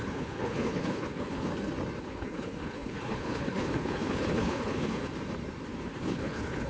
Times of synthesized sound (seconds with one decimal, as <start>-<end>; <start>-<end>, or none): 0.0-1.5; 2.0-5.0; 6.0-6.7